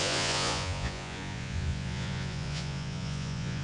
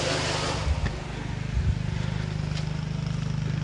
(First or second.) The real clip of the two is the second